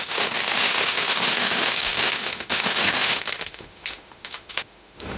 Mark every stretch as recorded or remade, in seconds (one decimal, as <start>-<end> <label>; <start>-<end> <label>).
0.0-5.2 remade